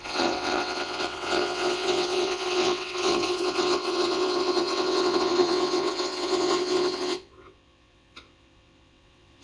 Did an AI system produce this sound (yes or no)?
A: yes